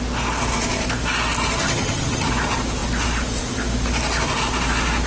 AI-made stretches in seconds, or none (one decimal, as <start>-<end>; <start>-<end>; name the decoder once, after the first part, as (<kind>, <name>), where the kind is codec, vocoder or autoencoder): 1.6-2.3 (vocoder, HiFi-GAN)